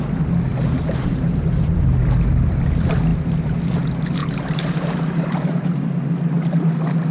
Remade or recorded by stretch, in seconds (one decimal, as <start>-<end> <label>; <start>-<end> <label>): 0.0-0.5 recorded; 0.5-1.8 remade; 1.8-4.2 recorded; 4.2-5.7 remade; 5.7-7.1 recorded